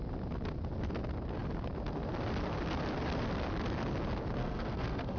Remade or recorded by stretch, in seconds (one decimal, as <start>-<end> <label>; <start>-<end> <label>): 0.0-4.4 recorded; 4.4-5.2 remade